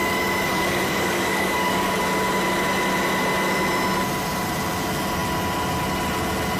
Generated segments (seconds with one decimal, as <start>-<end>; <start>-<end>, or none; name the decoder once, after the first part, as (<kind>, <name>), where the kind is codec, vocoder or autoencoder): 0.5-2.0 (codec, DAC)

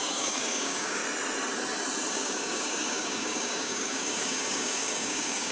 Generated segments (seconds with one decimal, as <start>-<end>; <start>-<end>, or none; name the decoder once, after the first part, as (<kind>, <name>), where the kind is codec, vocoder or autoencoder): 0.0-1.0 (codec, DAC); 2.1-5.5

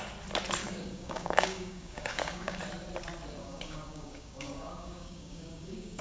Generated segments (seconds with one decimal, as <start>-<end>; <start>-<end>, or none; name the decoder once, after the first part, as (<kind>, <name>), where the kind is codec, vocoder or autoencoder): 0.6-2.6 (codec, DAC); 3.4-6.0

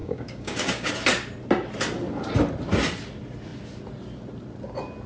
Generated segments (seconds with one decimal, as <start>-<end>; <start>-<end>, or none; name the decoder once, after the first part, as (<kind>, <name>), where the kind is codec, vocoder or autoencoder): 0.0-0.9 (codec, DAC)